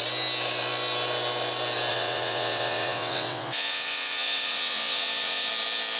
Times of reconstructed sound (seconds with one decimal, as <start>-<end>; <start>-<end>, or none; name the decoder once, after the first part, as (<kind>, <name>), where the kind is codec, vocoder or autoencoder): 1.9-5.5 (vocoder, WaveNeXt)